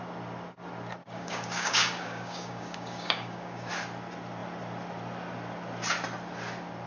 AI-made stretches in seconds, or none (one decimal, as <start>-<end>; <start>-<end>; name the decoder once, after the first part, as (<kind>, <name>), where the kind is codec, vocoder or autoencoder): 1.0-3.7 (codec, DAC)